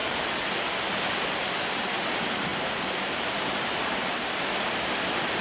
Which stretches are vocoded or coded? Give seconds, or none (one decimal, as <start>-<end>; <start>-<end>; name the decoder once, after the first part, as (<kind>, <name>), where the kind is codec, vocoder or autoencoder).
1.3-5.4 (vocoder, BigVGAN v2)